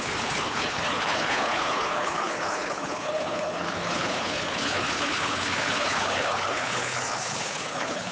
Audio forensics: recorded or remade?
remade